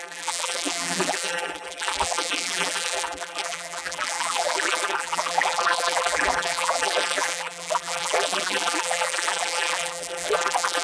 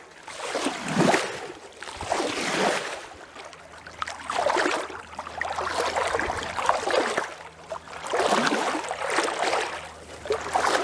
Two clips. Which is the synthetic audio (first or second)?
first